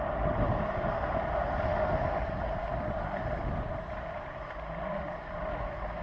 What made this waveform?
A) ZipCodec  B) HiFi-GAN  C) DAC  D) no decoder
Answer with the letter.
D